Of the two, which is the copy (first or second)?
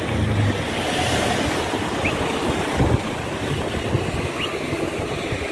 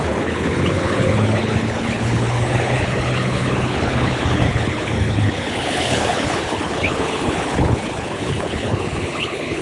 second